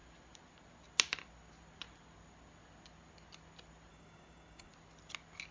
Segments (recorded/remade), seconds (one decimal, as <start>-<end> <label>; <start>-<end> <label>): 0.0-3.9 recorded; 3.9-4.7 remade; 4.7-5.5 recorded